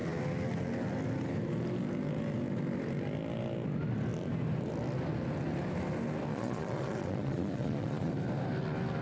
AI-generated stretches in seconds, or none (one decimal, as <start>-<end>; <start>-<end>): 6.3-8.1